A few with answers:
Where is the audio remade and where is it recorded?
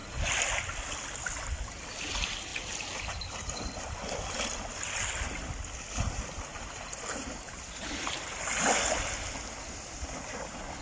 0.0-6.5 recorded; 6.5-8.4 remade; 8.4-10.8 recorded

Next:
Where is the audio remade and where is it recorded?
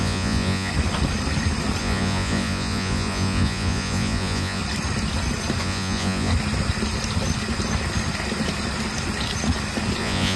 0.0-0.7 remade; 0.7-1.8 recorded; 1.8-4.6 remade; 4.6-5.6 recorded; 5.6-6.3 remade; 6.3-10.0 recorded; 10.0-10.4 remade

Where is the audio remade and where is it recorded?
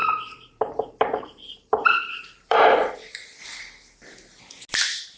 0.0-2.9 remade; 2.9-5.2 recorded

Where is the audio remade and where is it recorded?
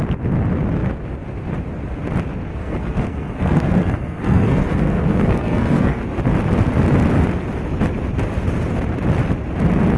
0.0-2.5 recorded; 2.5-6.0 remade; 6.0-10.0 recorded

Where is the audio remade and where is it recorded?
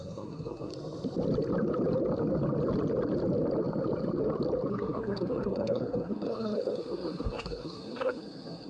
0.0-0.7 remade; 0.7-4.7 recorded; 4.7-8.7 remade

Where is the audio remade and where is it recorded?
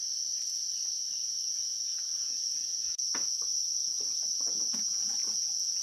0.0-1.2 recorded; 1.2-3.3 remade; 3.3-3.8 recorded; 3.8-5.8 remade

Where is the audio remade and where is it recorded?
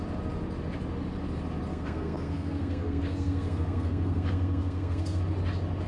0.0-1.7 recorded; 1.7-5.2 remade; 5.2-5.9 recorded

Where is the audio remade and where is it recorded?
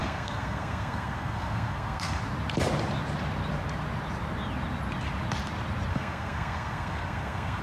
0.0-2.2 remade; 2.2-5.9 recorded; 5.9-7.6 remade